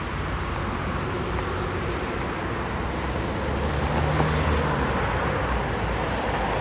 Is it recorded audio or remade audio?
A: recorded